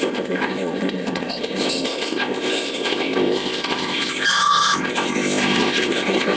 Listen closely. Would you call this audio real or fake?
fake